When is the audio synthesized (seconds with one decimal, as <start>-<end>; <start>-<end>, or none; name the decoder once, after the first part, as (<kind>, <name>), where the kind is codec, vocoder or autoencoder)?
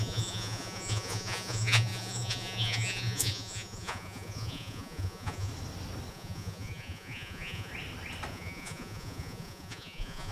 0.0-5.5 (vocoder, Vocos); 6.1-7.7; 8.3-10.3